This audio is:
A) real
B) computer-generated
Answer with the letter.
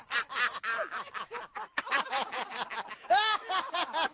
A